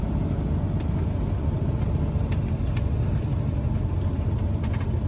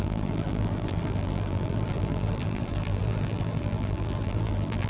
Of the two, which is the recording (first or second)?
first